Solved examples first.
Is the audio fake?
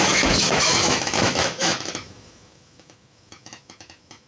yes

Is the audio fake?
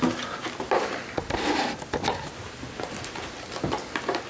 no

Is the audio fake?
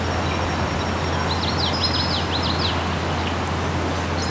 no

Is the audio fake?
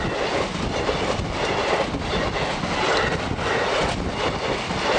no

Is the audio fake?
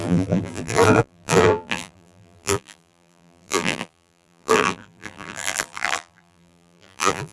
yes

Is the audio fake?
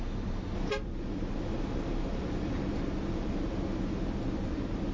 no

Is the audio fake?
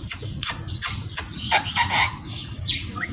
yes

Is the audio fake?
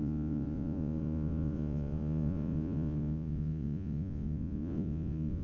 yes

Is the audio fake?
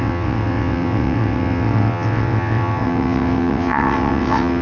yes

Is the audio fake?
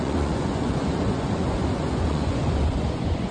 yes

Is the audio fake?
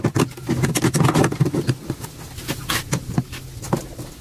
no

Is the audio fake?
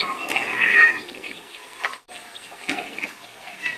yes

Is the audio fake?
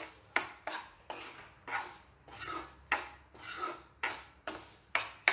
no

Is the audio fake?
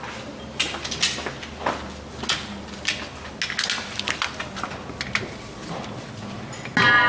no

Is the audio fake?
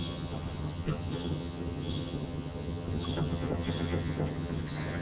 yes